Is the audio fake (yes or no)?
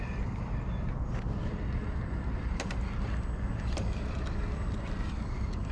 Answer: no